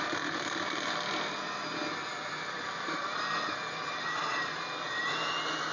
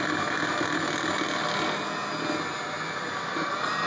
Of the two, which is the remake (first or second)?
first